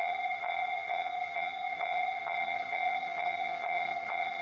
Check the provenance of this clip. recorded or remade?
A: remade